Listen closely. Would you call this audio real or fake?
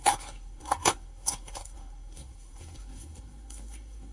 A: fake